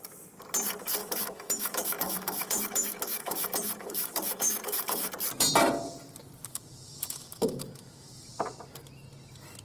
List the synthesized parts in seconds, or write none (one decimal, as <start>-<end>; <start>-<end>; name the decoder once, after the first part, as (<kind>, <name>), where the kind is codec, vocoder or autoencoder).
1.0-5.1 (autoencoder, DAC-VAE); 6.5-8.3